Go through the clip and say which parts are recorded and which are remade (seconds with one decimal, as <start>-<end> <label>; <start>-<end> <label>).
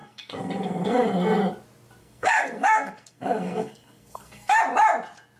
0.0-1.4 remade; 1.4-2.0 recorded; 2.0-4.6 remade; 4.6-5.4 recorded